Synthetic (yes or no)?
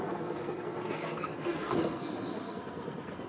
yes